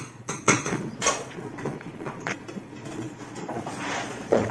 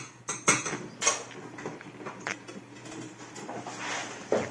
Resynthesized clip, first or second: first